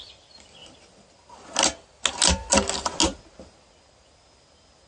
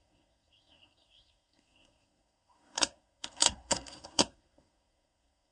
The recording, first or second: first